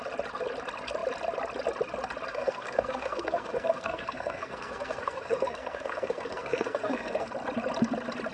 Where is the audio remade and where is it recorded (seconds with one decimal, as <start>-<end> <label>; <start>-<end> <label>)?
0.0-2.3 recorded; 2.3-7.3 remade; 7.3-8.3 recorded